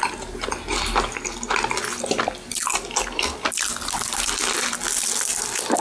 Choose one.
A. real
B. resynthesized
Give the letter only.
A